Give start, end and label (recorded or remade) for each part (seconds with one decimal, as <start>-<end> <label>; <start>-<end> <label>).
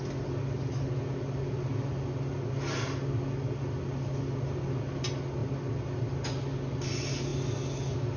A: 0.0-8.2 recorded